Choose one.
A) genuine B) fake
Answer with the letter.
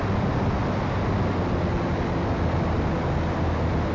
A